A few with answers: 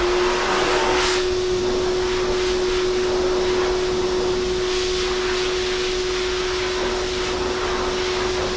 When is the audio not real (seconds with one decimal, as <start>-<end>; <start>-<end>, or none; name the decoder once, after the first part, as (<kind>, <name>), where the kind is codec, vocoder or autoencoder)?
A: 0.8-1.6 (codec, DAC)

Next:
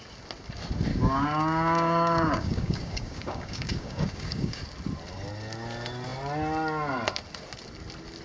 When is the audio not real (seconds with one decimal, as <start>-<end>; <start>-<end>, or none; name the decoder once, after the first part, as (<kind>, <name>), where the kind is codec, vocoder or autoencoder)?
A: 0.9-4.6 (codec, DAC)

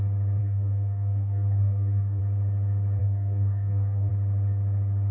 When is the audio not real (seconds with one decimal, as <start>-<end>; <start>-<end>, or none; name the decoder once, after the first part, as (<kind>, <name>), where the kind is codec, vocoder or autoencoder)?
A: 0.4-2.2 (codec, DAC); 3.0-4.1

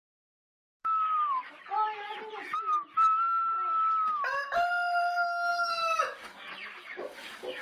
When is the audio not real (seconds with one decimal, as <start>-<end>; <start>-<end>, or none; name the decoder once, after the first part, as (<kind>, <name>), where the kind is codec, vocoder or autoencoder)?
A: 0.0-1.5 (codec, DAC); 5.5-7.6